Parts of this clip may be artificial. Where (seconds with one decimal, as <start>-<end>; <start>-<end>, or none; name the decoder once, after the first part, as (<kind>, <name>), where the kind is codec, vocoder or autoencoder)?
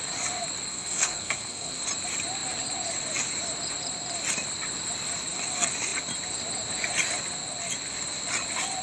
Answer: 0.7-1.8 (codec, SNAC)